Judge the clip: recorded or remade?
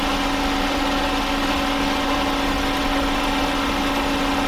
recorded